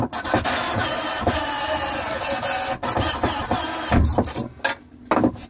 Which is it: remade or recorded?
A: recorded